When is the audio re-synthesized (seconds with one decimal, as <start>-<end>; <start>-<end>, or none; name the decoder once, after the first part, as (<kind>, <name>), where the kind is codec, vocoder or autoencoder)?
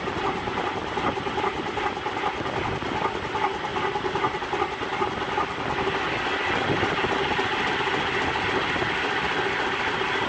none